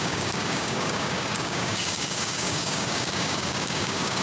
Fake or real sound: fake